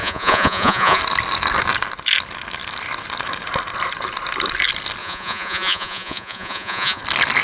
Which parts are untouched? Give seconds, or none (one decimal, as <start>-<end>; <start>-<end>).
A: 1.0-5.0; 7.0-7.4